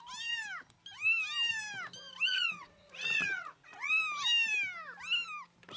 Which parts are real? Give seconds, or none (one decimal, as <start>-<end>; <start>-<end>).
0.0-2.3; 3.9-5.8